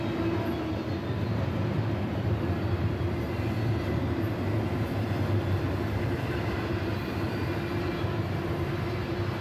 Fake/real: real